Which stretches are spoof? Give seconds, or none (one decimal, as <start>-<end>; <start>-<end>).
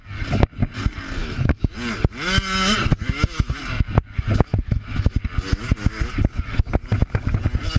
1.2-1.7; 2.9-3.6; 4.5-5.1; 5.5-6.1